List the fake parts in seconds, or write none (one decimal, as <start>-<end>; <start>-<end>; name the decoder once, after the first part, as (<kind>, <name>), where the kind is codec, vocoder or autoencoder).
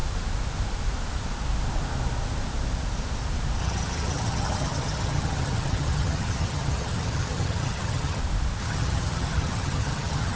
3.6-8.2 (vocoder, HiFi-GAN); 8.6-10.4